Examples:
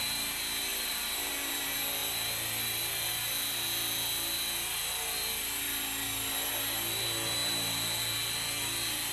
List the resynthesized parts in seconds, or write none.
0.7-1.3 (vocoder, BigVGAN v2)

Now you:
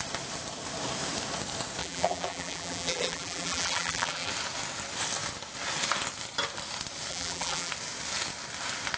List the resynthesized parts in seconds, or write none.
1.8-4.3 (vocoder, BigVGAN v2); 7.1-7.7

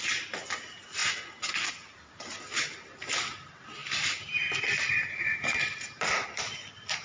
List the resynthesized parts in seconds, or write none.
none

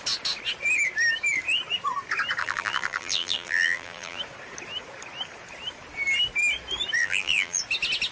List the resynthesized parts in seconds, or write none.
2.4-4.2 (vocoder, BigVGAN v2); 7.0-7.6

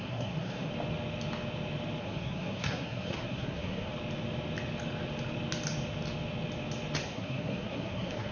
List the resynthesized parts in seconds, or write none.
0.0-0.7 (codec, SNAC); 2.0-3.9; 7.0-8.3

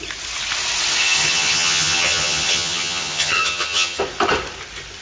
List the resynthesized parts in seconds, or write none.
1.0-4.0 (vocoder, HiFi-GAN)